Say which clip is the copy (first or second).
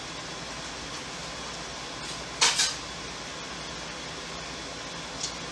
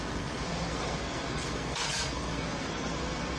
second